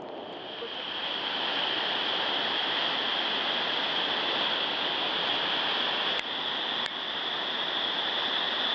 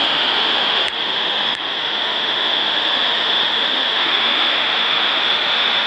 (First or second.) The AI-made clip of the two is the second